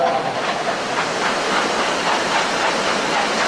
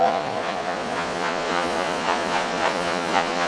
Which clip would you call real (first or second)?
first